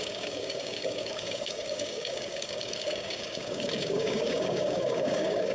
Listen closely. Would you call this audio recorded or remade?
remade